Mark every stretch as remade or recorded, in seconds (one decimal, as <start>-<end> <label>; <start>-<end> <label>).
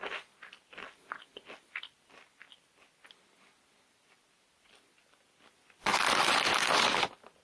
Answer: 0.0-7.4 recorded